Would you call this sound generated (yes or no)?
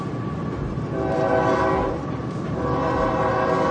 no